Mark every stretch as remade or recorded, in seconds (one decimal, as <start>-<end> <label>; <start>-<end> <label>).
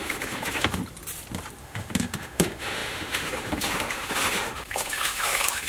0.0-0.8 remade; 0.8-1.6 recorded; 1.6-5.7 remade